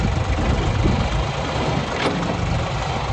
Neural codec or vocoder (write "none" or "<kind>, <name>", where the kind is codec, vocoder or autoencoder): none